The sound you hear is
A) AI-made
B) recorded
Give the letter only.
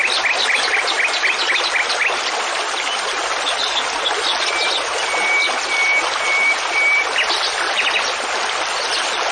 B